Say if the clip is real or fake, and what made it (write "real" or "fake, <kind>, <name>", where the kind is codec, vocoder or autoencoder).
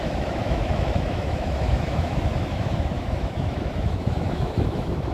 fake, autoencoder, DAC-VAE